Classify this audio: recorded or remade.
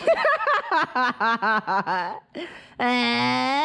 recorded